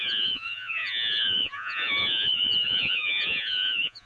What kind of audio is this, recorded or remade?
remade